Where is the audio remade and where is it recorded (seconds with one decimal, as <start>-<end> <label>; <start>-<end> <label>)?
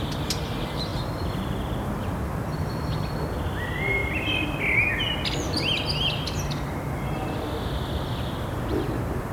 0.0-9.3 recorded